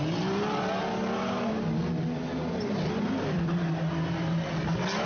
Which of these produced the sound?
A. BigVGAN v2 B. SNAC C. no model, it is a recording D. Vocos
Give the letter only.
C